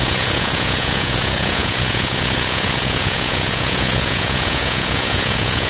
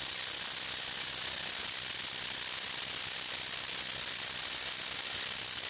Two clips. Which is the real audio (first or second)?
second